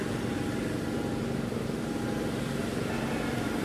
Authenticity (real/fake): fake